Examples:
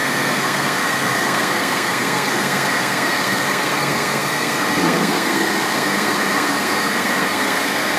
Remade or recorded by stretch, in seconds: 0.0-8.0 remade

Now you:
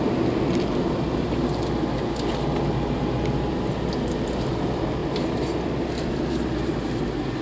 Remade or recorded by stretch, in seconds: 0.0-7.4 recorded

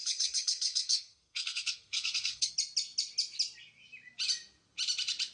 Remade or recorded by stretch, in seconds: 0.0-2.5 remade; 2.5-5.3 recorded

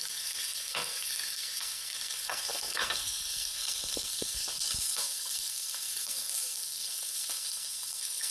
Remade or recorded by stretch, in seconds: 0.0-8.3 remade